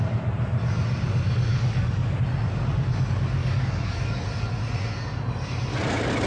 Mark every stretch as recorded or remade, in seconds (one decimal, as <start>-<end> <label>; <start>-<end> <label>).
0.0-1.5 recorded; 1.5-2.2 remade; 2.2-3.4 recorded; 3.4-4.3 remade; 4.3-6.3 recorded

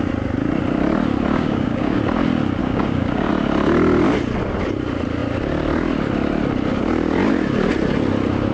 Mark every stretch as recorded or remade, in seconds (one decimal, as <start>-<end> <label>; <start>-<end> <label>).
0.0-1.3 recorded; 1.3-2.0 remade; 2.0-2.6 recorded; 2.6-3.3 remade; 3.3-8.5 recorded

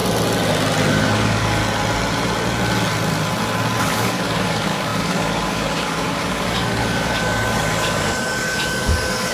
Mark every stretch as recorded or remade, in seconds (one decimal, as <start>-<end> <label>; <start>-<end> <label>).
0.0-0.9 recorded; 0.9-1.6 remade; 1.6-3.8 recorded; 3.8-9.3 remade

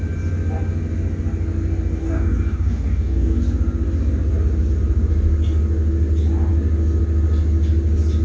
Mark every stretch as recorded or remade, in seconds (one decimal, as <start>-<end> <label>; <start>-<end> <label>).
0.0-2.0 recorded; 2.0-3.4 remade; 3.4-8.2 recorded

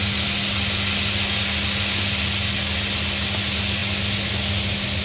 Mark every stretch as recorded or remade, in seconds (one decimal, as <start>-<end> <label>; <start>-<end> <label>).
0.0-5.0 recorded

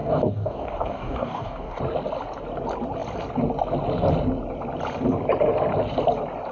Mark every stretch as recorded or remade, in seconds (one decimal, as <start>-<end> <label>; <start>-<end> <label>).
0.0-1.8 remade; 1.8-6.5 recorded

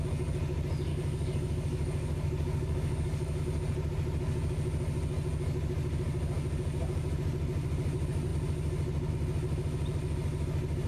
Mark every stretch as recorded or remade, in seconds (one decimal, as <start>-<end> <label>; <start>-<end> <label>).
0.0-0.9 recorded; 0.9-3.4 remade; 3.4-10.9 recorded

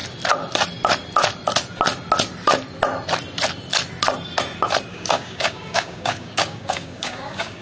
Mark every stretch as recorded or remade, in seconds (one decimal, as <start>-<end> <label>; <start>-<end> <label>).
0.0-4.9 recorded; 4.9-7.6 remade